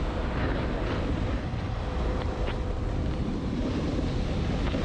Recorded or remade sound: recorded